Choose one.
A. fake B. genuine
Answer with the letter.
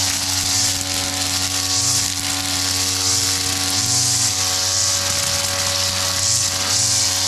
B